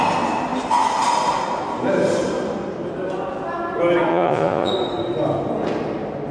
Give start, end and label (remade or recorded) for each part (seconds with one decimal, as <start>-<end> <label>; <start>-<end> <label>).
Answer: 0.0-4.1 recorded; 4.1-4.7 remade; 4.7-6.3 recorded